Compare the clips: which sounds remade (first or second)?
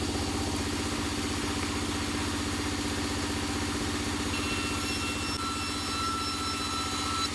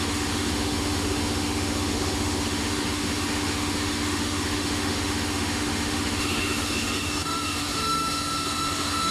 second